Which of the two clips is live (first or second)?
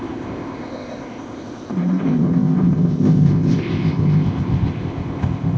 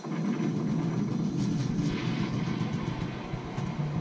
second